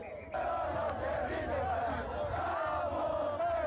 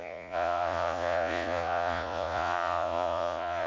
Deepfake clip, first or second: second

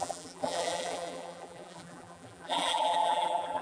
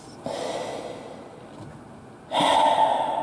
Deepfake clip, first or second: first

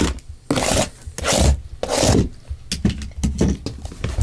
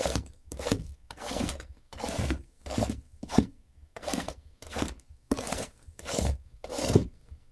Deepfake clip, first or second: second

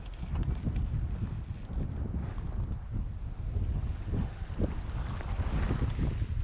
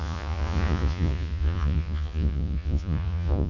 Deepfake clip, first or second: second